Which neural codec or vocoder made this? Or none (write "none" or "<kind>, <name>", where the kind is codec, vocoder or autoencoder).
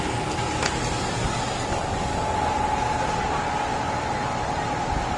none